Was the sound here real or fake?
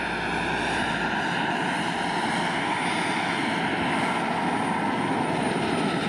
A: real